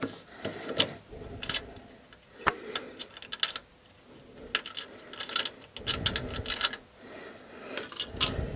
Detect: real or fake real